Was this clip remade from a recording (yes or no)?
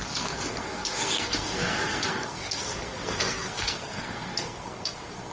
yes